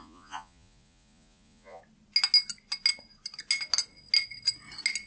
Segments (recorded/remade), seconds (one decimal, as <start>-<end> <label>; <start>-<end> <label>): 0.0-1.8 remade; 1.8-5.1 recorded